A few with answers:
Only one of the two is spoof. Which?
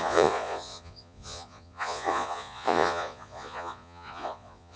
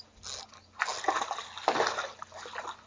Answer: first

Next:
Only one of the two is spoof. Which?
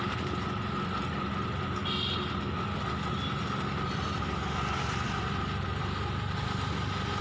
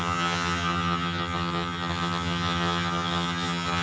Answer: second